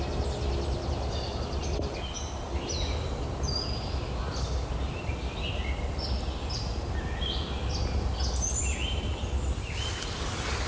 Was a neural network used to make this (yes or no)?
no